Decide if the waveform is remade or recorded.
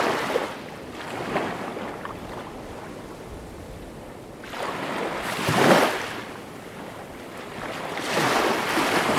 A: recorded